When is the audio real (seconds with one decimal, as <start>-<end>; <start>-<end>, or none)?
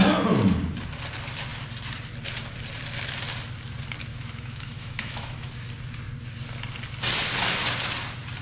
0.0-4.1; 5.5-8.4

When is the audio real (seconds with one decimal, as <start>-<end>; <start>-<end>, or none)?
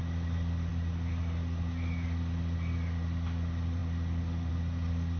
0.0-5.2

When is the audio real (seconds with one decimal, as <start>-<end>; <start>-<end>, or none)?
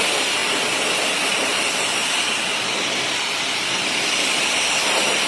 0.0-5.3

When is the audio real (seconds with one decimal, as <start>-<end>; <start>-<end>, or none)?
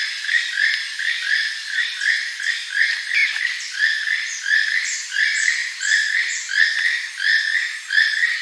0.0-3.2; 4.4-5.6; 6.1-8.4